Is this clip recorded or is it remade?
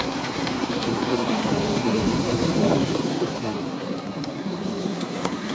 remade